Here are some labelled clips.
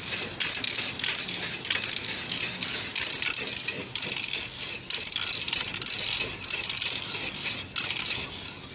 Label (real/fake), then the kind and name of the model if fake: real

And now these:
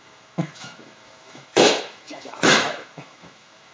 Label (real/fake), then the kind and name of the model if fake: fake, autoencoder, DAC-VAE